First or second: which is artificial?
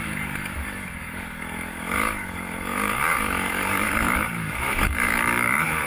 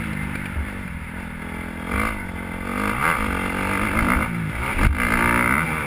first